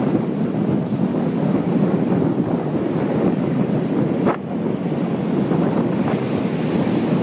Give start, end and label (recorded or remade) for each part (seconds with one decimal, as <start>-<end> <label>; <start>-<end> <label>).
0.0-1.1 recorded; 1.1-2.0 remade; 2.0-3.1 recorded; 3.1-3.8 remade; 3.8-7.2 recorded